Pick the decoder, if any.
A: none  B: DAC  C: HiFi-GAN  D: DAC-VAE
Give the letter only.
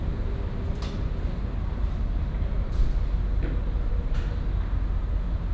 A